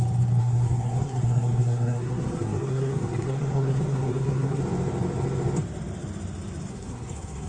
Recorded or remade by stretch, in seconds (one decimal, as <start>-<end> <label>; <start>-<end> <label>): 0.0-0.4 recorded; 0.4-4.6 remade; 4.6-6.7 recorded; 6.7-7.5 remade